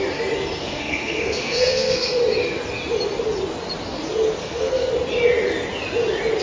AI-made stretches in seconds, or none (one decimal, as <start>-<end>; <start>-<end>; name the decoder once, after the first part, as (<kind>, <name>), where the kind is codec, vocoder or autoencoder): 0.6-2.2 (codec, SNAC); 4.4-4.9